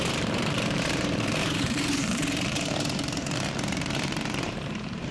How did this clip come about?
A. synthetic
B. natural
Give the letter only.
A